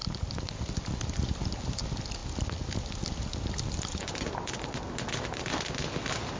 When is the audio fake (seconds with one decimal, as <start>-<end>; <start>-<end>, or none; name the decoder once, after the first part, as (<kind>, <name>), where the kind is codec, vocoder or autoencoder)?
none